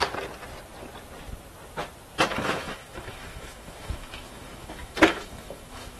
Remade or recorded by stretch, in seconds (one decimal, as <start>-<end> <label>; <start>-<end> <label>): 0.0-2.3 recorded; 2.3-6.0 remade

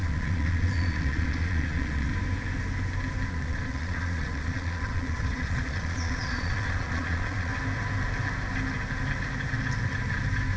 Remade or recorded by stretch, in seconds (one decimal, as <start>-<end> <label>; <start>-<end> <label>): 0.0-2.1 remade; 2.1-3.3 recorded; 3.3-7.5 remade; 7.5-10.6 recorded

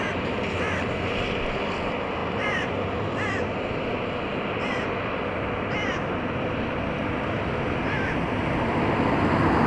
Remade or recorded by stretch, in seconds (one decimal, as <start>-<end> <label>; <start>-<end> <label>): 0.0-9.7 recorded